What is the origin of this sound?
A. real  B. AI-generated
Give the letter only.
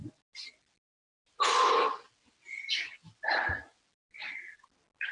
A